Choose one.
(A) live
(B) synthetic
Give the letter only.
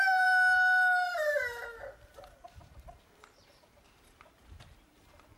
B